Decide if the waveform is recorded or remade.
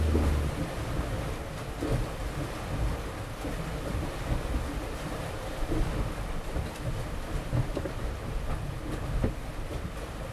recorded